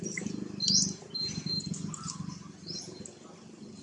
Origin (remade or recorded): recorded